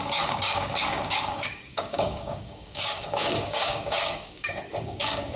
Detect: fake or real fake